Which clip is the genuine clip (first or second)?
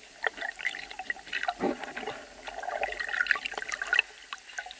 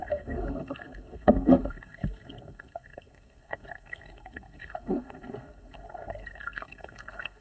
first